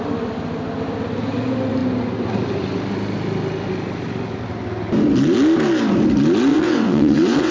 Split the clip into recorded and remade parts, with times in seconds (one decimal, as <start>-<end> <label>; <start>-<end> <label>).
0.0-6.5 recorded; 6.5-7.5 remade

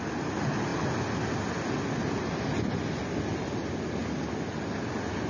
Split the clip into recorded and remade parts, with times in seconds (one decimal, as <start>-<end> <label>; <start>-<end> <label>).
0.0-5.3 recorded